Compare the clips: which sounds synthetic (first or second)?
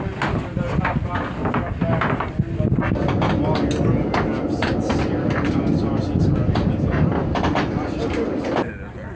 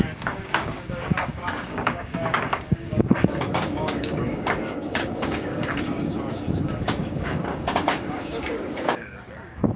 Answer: second